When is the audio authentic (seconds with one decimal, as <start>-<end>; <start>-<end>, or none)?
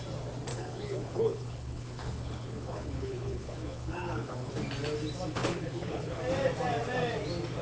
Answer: 0.0-0.5; 4.5-5.4; 6.2-7.6